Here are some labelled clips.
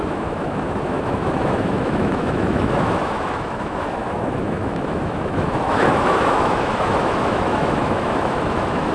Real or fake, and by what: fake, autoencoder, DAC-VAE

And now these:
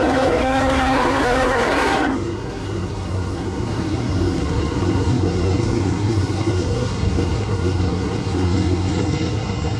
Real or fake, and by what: fake, codec, SNAC